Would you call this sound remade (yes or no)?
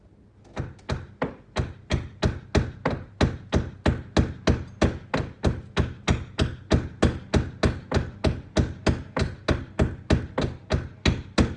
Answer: no